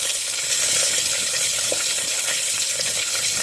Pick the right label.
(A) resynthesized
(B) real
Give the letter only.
A